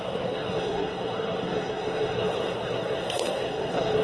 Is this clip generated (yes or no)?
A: yes